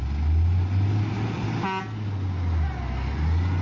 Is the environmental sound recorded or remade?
recorded